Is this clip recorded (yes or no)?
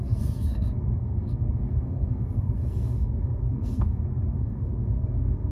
no